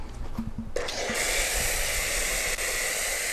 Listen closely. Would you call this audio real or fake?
real